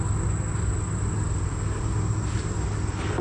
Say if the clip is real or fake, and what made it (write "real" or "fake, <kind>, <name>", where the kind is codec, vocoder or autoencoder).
real